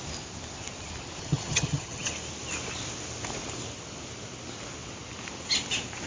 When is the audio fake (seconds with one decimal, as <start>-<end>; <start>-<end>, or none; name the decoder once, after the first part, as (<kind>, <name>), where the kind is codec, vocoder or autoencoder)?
1.2-2.1 (vocoder, HiFi-GAN)